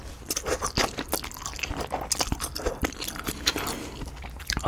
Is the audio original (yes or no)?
yes